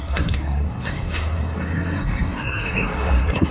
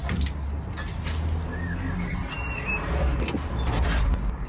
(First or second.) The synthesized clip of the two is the first